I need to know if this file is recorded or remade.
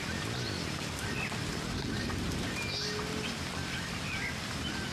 recorded